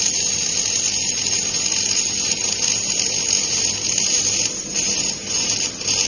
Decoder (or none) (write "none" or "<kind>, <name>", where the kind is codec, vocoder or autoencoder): none